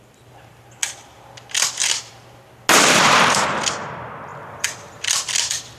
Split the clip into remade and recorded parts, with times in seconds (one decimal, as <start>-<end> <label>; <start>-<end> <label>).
0.0-4.3 recorded; 4.3-5.8 remade